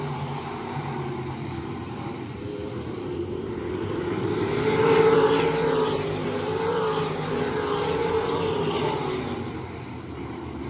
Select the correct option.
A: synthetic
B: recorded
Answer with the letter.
A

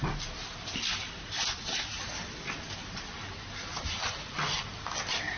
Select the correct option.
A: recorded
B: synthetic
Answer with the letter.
A